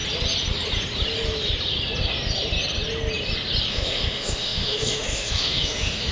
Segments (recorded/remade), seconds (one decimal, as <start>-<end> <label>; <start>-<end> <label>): 0.0-3.7 recorded; 3.7-6.1 remade